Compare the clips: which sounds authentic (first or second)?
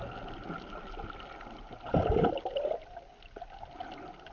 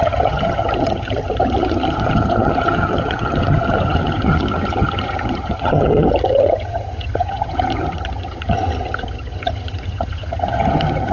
first